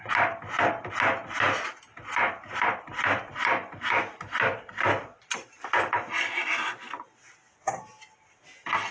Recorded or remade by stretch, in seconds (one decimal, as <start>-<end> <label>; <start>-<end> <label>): 0.0-8.9 recorded